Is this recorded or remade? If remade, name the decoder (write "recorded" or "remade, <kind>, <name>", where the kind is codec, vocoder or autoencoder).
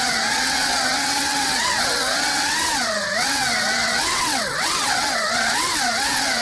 remade, vocoder, WaveNeXt